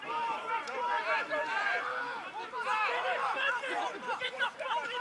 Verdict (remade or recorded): remade